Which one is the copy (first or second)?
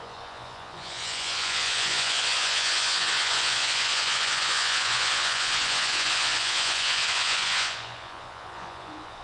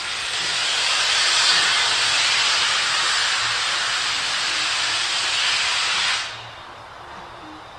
first